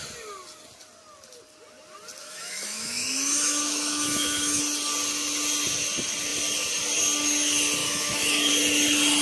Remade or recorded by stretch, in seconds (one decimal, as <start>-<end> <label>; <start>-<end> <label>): 0.0-2.2 recorded; 2.2-4.6 remade; 4.6-7.8 recorded; 7.8-8.5 remade; 8.5-9.2 recorded